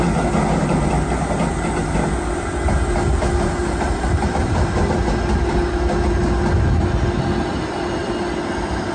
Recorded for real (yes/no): yes